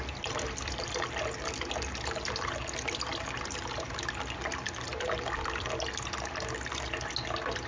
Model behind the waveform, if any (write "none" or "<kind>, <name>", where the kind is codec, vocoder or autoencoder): none